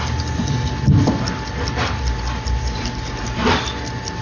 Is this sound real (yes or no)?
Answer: yes